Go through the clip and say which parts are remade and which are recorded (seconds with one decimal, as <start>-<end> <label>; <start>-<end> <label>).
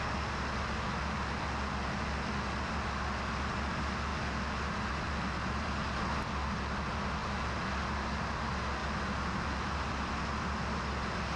0.0-11.4 recorded